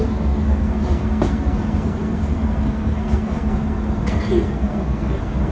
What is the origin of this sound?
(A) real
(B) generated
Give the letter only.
B